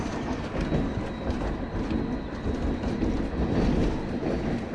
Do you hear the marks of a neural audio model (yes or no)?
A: no